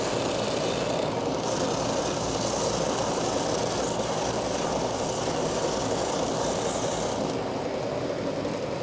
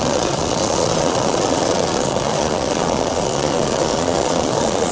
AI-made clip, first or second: second